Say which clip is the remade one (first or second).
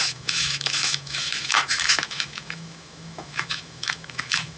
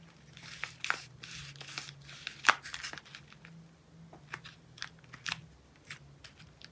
first